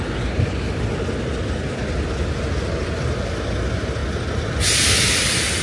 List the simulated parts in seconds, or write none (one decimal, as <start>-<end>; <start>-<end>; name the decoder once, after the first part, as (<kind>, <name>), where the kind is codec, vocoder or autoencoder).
none